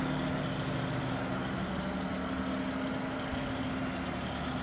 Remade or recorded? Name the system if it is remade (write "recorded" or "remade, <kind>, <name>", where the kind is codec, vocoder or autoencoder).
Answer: recorded